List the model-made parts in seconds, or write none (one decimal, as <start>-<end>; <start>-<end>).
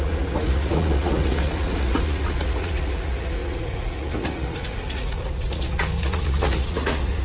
0.0-7.2